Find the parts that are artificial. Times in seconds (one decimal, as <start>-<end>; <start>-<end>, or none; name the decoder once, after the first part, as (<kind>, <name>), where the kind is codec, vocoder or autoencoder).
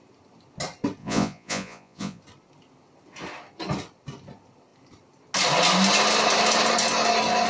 1.0-2.2 (vocoder, Vocos)